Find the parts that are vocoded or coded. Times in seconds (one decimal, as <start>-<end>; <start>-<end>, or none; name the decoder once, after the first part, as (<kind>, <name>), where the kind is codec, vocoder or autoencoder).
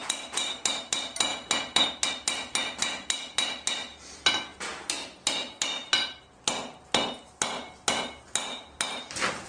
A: none